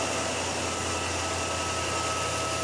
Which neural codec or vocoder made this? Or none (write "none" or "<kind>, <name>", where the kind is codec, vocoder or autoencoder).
none